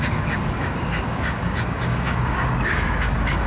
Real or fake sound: fake